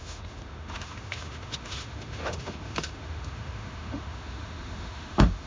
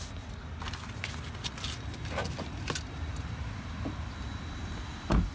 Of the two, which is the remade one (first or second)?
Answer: first